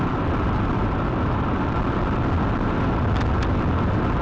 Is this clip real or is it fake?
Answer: real